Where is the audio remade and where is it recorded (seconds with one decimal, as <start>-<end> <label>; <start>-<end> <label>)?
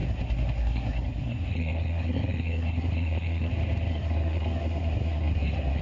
0.0-3.5 remade; 3.5-3.9 recorded; 3.9-5.8 remade